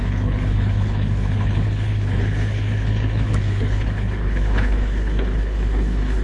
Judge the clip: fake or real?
fake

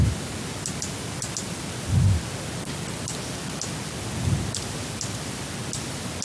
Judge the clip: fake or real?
real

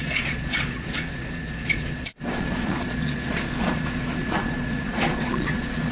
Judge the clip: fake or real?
fake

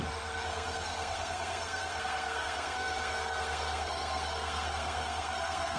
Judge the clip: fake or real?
fake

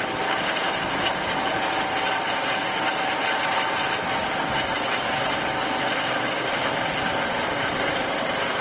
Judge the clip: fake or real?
real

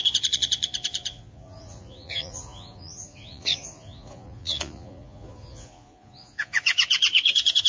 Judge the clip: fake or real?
fake